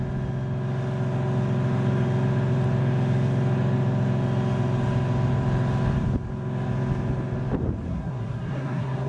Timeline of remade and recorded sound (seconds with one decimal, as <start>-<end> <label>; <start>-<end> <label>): 0.0-7.9 recorded; 7.9-9.1 remade